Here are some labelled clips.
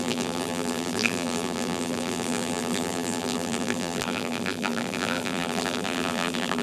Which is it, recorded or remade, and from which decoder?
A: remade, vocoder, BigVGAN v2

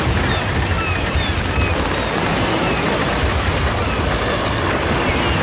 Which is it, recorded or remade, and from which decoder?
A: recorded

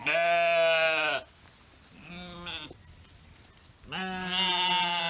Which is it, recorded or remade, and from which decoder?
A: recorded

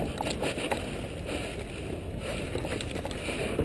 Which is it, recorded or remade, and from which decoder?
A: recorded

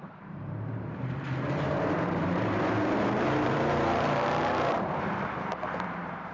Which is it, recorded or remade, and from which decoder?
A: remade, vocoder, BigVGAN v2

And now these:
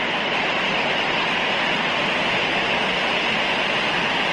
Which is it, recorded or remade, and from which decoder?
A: recorded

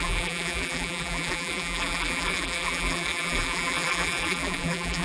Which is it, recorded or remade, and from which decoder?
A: remade, vocoder, BigVGAN v2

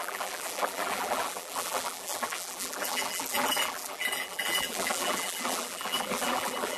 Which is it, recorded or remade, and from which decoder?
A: remade, vocoder, BigVGAN v2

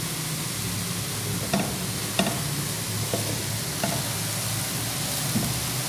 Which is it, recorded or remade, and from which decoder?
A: recorded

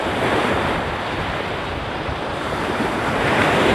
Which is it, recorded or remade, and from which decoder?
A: remade, vocoder, BigVGAN v2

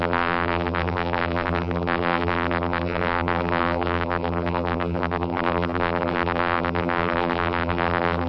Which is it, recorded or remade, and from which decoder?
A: remade, vocoder, BigVGAN v2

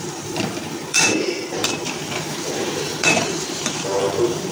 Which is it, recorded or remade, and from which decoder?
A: remade, vocoder, BigVGAN v2